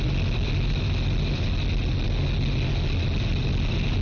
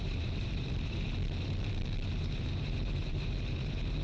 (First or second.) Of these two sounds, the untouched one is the first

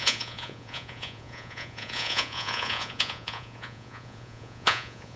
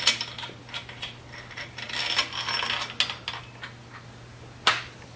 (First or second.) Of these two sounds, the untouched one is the second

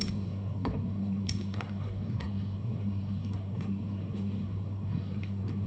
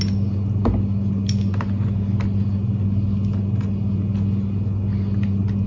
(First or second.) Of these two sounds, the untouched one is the second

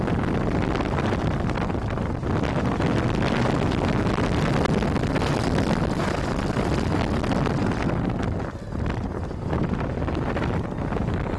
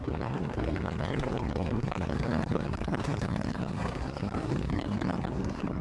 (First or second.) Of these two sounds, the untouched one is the first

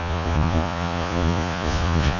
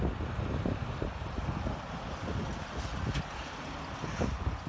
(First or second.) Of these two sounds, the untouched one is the second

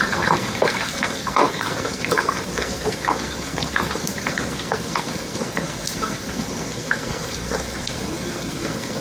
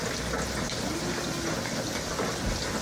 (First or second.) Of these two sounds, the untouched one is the second